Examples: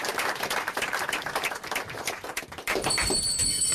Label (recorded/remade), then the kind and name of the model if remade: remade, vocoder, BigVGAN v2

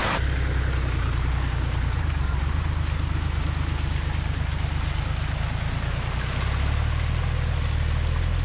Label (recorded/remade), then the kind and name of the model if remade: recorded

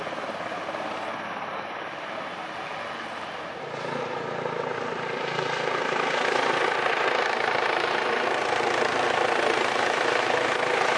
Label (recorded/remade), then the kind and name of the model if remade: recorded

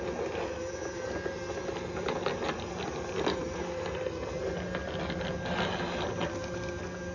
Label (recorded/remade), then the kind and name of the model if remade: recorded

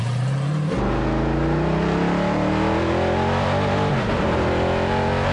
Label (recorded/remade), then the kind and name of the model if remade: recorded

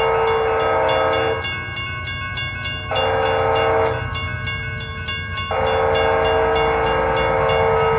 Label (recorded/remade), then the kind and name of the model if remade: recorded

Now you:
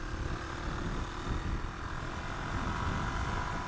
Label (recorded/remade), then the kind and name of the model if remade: recorded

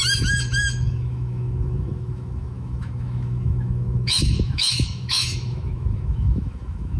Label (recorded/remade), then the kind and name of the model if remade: remade, autoencoder, DAC-VAE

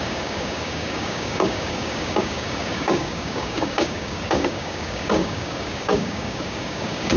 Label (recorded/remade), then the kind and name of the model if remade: remade, codec, DAC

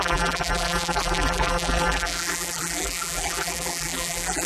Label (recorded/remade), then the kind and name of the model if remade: remade, vocoder, BigVGAN v2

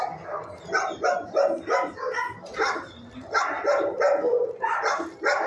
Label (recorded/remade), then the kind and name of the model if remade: recorded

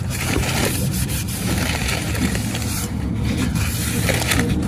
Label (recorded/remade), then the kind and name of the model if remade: remade, vocoder, BigVGAN v2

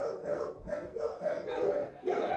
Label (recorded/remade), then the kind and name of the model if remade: remade, codec, SNAC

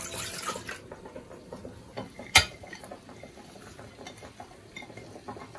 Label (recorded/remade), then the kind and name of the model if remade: recorded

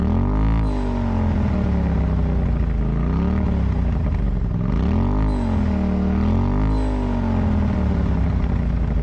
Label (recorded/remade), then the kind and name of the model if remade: recorded